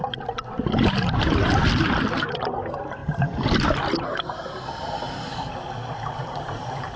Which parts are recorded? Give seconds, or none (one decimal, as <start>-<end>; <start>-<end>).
0.0-7.0